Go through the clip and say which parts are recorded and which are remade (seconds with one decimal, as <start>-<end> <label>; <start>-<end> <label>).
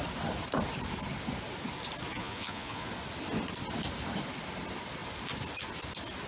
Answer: 0.0-2.1 recorded; 2.1-2.9 remade; 2.9-6.3 recorded